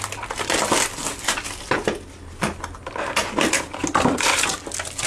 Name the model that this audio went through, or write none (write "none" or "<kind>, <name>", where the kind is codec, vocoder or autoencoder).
none